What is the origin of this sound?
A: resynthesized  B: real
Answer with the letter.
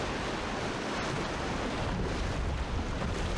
B